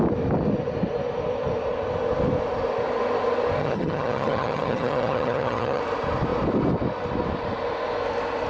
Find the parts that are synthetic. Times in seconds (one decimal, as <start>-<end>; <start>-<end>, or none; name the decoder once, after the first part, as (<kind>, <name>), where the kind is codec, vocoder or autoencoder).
3.6-5.8 (vocoder, HiFi-GAN)